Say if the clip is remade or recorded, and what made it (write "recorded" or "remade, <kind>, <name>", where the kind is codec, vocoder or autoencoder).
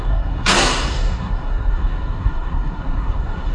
remade, codec, SNAC